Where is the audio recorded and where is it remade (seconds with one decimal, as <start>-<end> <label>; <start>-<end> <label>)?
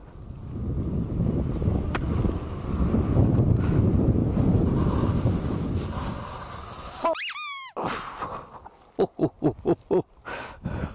0.0-10.9 recorded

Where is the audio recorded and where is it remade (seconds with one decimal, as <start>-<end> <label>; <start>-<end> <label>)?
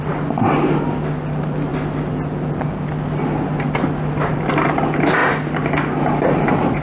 0.0-6.8 recorded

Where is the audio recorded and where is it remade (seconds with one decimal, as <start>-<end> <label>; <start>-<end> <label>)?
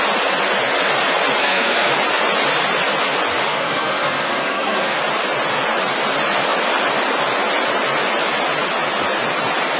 0.0-1.4 recorded; 1.4-1.9 remade; 1.9-3.5 recorded; 3.5-5.0 remade; 5.0-9.8 recorded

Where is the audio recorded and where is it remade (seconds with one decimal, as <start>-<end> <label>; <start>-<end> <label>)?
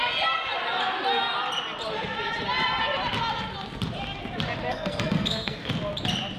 0.0-4.7 recorded; 4.7-5.7 remade; 5.7-6.4 recorded